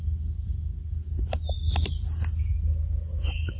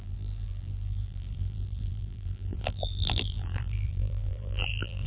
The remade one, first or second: second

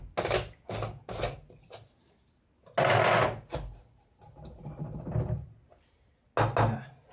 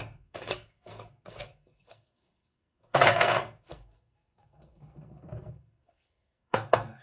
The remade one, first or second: second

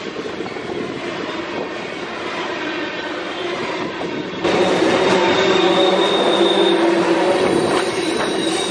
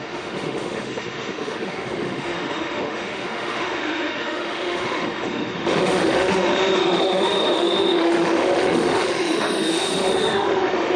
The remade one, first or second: second